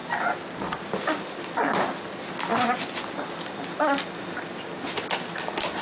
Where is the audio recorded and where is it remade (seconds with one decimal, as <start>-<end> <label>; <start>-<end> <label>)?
0.0-5.8 recorded